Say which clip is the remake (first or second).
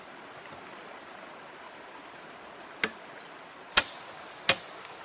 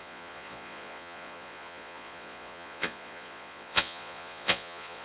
second